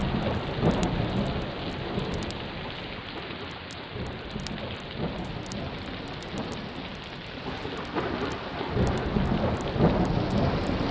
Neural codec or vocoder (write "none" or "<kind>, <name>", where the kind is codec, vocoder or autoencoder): none